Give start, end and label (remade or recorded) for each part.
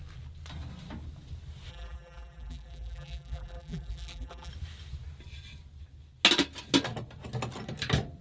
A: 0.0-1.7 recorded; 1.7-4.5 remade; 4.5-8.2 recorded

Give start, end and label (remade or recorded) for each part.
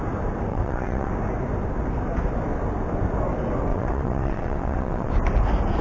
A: 0.0-0.5 recorded; 0.5-1.1 remade; 1.1-3.7 recorded; 3.7-5.1 remade; 5.1-5.8 recorded